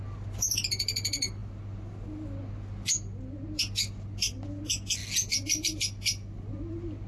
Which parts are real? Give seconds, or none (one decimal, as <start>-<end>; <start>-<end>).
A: 0.0-7.1